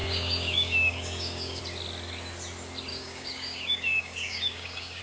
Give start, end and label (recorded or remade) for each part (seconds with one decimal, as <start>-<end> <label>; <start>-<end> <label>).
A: 0.0-1.6 remade; 1.6-2.9 recorded; 2.9-5.0 remade